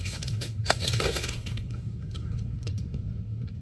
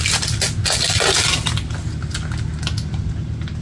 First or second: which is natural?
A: second